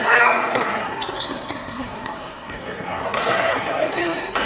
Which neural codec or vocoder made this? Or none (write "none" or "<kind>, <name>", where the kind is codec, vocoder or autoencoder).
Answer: codec, SNAC